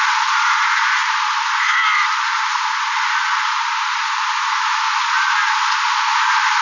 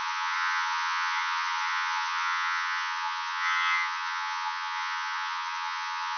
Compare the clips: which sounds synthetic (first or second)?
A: second